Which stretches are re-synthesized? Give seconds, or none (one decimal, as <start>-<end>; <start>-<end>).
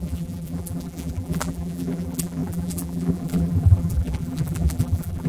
0.0-5.3